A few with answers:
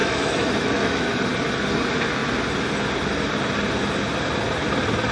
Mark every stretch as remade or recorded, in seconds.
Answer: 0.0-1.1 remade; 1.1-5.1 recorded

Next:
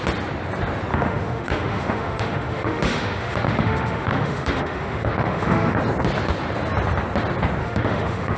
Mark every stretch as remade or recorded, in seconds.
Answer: 0.0-0.9 recorded; 0.9-5.8 remade; 5.8-7.6 recorded; 7.6-8.4 remade

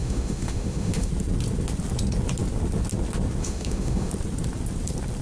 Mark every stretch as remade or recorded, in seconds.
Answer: 0.0-1.1 remade; 1.1-3.4 recorded; 3.4-4.1 remade; 4.1-5.2 recorded

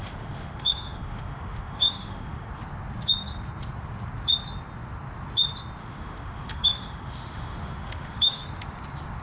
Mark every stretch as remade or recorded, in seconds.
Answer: 0.0-2.5 remade; 2.5-5.8 recorded; 5.8-8.4 remade; 8.4-9.2 recorded